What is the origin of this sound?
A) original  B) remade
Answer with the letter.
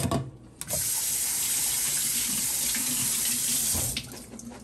A